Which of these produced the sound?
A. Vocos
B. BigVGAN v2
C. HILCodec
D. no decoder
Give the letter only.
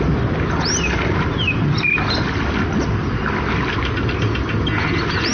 D